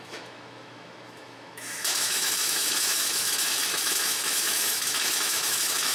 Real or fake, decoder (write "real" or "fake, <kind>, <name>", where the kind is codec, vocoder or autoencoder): fake, autoencoder, DAC-VAE